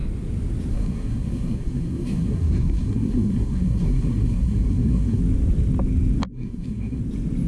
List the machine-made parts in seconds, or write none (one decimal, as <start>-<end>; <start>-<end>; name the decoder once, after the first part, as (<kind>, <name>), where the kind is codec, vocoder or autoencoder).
0.7-5.2 (codec, SNAC); 6.3-7.0